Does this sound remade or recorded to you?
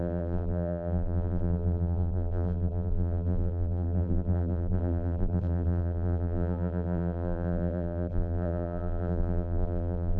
remade